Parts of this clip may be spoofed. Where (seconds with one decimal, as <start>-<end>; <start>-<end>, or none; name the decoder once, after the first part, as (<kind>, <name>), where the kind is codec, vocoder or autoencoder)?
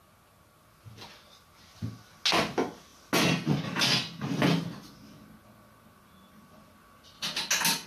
none